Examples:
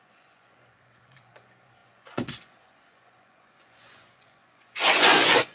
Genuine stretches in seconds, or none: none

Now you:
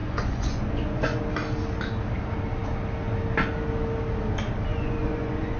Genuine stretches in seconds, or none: 1.2-4.7